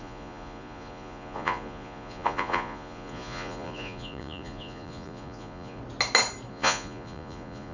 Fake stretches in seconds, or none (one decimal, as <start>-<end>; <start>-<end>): 0.0-5.8; 6.5-7.7